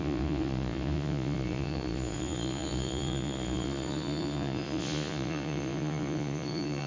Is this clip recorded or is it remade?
remade